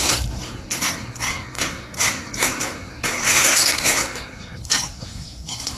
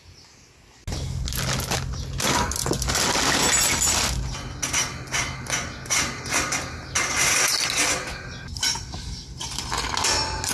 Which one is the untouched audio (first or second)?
second